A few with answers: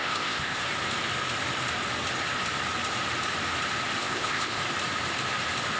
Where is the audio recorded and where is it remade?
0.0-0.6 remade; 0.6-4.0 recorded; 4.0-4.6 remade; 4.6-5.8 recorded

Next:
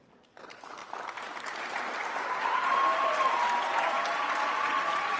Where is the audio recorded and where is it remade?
0.0-0.8 recorded; 0.8-3.9 remade; 3.9-5.2 recorded

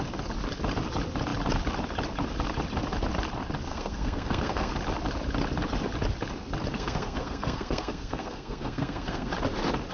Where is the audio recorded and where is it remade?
0.0-3.7 recorded; 3.7-4.7 remade; 4.7-6.7 recorded; 6.7-9.3 remade; 9.3-9.9 recorded

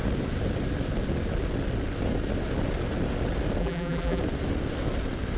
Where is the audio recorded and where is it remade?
0.0-3.6 recorded; 3.6-4.2 remade; 4.2-5.4 recorded

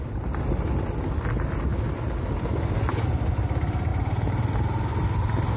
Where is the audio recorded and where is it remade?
0.0-5.6 recorded